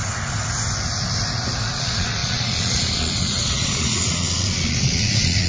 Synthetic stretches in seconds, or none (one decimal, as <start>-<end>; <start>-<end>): 1.8-5.5

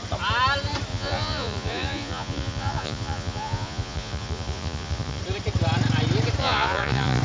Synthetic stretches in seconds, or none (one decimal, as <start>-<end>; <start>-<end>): 0.9-5.2; 6.4-7.2

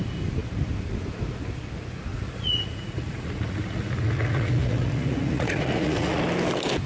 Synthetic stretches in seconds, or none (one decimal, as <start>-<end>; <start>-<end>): 2.1-6.2

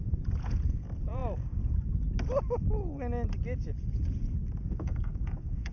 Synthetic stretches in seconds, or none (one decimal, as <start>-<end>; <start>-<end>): 0.0-1.2; 4.6-5.7

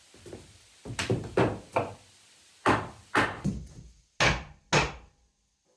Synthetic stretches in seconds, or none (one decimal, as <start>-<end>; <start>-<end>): none

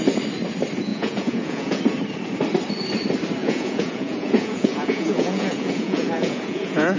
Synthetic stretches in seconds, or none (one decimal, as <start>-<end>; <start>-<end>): 0.9-1.8; 3.4-7.0

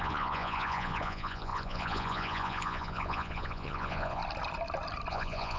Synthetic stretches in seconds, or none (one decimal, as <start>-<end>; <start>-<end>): 0.0-4.2; 5.1-5.6